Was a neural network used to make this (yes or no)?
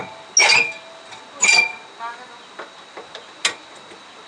no